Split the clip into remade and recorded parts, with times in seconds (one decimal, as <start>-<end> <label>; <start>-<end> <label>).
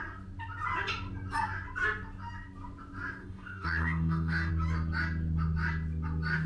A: 0.0-3.2 recorded; 3.2-4.5 remade; 4.5-6.5 recorded